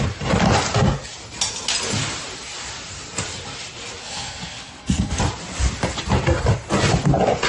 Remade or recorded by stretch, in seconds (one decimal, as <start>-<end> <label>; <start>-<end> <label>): 0.0-4.0 recorded; 4.0-5.2 remade; 5.2-7.5 recorded